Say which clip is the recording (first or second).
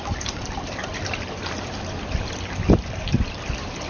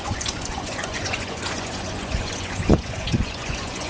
first